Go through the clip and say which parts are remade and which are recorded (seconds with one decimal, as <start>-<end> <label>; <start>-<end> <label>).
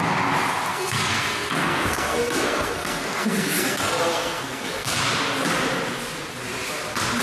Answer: 0.0-0.7 recorded; 0.7-5.0 remade; 5.0-7.2 recorded